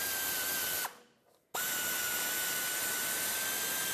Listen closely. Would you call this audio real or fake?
real